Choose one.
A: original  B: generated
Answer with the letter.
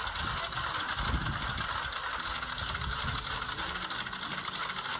A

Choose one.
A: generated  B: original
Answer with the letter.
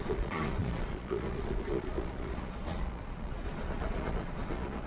A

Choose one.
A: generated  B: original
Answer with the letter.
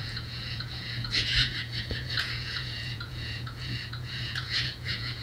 A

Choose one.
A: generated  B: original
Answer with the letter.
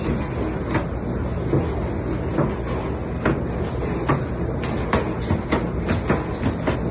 B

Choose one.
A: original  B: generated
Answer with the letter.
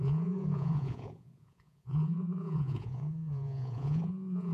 B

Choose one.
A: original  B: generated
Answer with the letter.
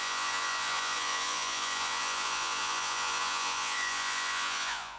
B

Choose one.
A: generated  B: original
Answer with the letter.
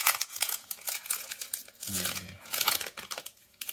A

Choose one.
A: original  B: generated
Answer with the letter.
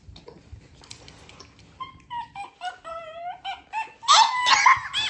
A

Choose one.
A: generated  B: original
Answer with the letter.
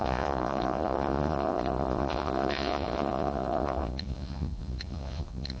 A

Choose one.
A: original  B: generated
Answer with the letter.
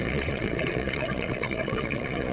B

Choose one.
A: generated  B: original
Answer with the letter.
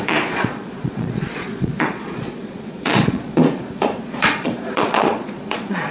A